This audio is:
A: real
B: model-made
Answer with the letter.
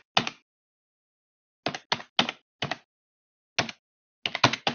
A